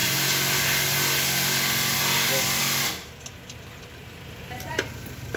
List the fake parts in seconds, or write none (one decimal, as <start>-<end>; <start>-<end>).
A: none